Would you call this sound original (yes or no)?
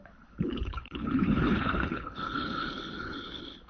no